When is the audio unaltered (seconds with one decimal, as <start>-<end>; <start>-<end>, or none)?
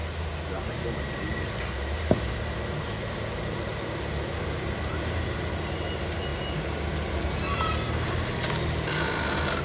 0.0-9.6